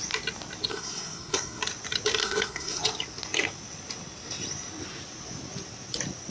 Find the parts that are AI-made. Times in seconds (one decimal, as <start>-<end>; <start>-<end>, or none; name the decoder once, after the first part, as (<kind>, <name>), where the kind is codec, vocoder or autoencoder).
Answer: 0.7-1.6 (codec, SNAC); 2.2-2.8